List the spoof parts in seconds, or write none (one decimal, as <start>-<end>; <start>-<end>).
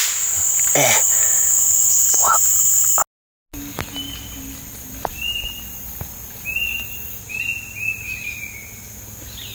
none